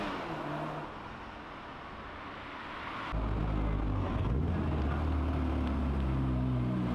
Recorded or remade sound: recorded